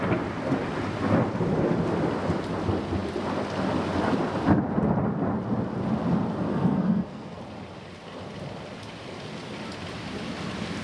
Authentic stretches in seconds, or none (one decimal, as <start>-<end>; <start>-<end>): 0.0-6.5; 7.4-10.8